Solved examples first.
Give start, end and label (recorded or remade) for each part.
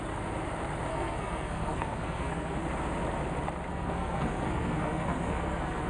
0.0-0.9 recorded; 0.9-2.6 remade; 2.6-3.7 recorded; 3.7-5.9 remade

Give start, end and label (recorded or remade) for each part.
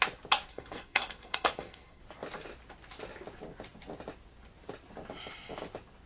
0.0-0.5 recorded; 0.5-2.0 remade; 2.0-6.1 recorded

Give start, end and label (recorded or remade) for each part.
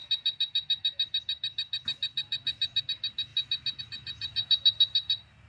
0.0-5.5 recorded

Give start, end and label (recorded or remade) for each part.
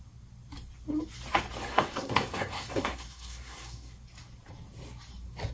0.0-1.7 recorded; 1.7-3.9 remade; 3.9-5.5 recorded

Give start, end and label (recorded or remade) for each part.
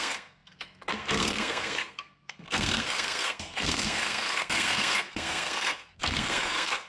0.0-6.9 remade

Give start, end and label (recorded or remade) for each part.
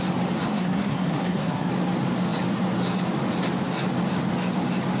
0.0-0.5 recorded; 0.5-1.7 remade; 1.7-5.0 recorded